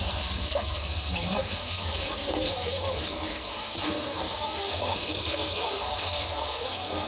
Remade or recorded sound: remade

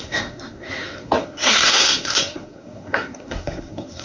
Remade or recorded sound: remade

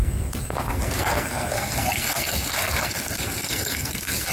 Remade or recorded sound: remade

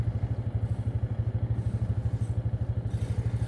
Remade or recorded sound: recorded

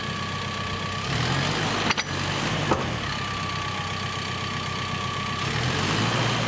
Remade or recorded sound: recorded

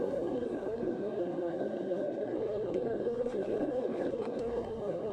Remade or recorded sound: remade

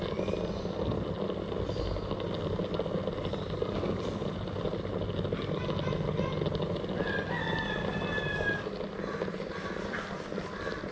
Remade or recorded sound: recorded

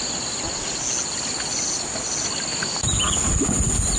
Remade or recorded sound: recorded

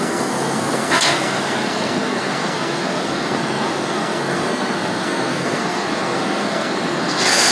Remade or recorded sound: remade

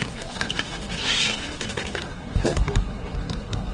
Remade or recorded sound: remade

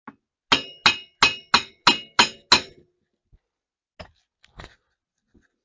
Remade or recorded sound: recorded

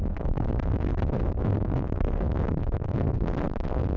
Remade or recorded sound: remade